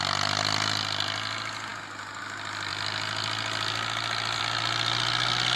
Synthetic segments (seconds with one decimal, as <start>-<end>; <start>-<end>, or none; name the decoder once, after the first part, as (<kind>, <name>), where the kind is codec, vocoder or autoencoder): none